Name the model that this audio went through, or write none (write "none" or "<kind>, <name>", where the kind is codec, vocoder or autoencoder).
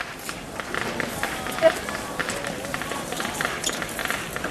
none